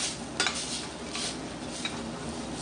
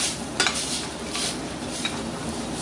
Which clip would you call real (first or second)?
first